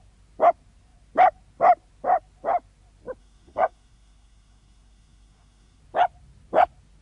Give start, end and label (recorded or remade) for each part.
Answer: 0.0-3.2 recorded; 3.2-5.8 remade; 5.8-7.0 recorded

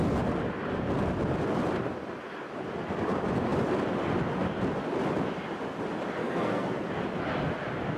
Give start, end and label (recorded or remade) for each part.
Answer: 0.0-6.2 recorded; 6.2-6.9 remade; 6.9-8.0 recorded